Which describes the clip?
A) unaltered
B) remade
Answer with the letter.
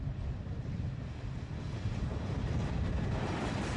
A